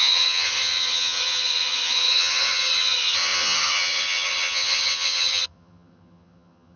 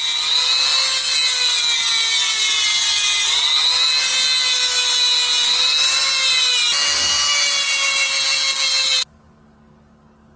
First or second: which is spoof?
first